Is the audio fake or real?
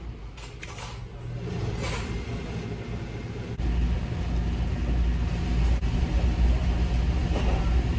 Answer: real